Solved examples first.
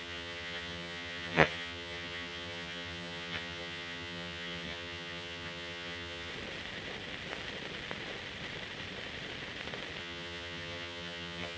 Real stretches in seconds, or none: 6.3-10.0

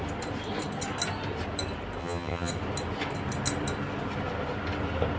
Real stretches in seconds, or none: 0.0-2.0; 2.5-5.2

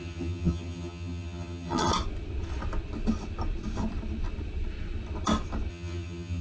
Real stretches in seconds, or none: 1.9-5.7